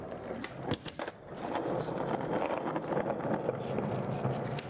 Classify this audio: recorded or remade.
recorded